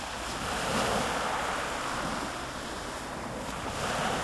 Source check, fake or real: real